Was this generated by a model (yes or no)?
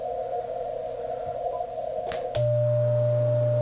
no